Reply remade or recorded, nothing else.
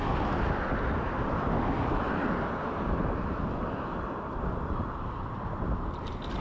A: recorded